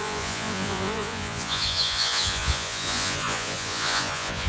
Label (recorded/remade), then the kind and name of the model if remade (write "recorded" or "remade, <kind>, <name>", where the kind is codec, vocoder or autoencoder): remade, vocoder, Vocos